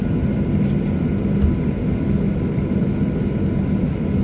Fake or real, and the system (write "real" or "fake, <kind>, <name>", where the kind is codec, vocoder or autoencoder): real